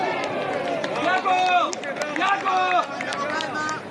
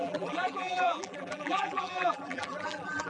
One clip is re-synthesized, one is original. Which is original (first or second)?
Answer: first